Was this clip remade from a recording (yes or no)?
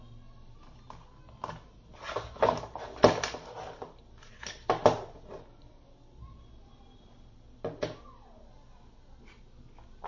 no